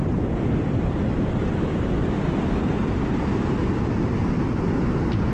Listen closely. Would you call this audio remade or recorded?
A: recorded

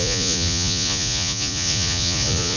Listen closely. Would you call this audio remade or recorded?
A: remade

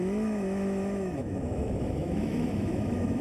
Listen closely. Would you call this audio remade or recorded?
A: remade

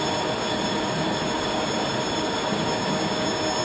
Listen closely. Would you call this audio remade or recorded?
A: recorded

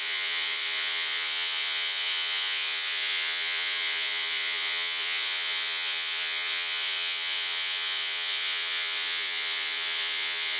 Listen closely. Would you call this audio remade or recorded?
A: remade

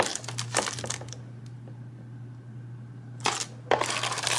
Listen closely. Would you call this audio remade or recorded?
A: recorded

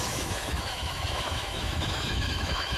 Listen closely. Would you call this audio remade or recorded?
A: remade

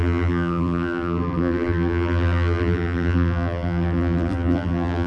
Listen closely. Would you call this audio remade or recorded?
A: remade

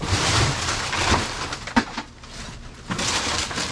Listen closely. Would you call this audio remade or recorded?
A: recorded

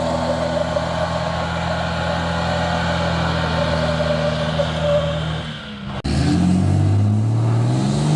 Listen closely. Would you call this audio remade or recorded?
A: recorded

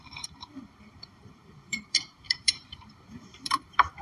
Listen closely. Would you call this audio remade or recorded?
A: remade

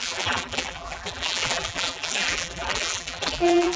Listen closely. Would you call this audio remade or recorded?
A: remade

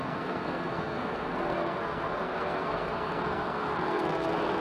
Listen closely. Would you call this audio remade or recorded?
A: remade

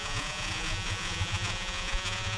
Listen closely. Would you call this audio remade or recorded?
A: remade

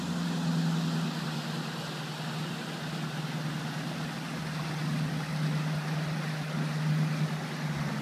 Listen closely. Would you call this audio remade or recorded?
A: recorded